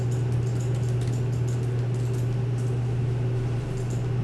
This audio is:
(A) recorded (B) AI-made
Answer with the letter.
A